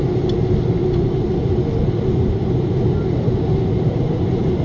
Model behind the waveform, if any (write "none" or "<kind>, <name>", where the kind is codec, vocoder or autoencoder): none